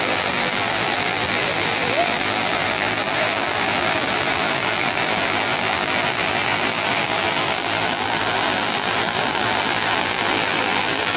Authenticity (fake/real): fake